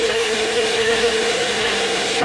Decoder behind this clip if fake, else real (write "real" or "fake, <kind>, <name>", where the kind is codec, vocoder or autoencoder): fake, codec, SNAC